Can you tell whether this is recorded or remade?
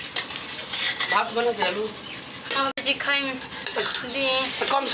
recorded